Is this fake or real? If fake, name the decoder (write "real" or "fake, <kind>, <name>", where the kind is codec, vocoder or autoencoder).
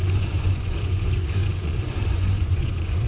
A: fake, vocoder, Vocos